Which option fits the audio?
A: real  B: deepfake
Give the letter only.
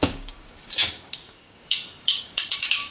B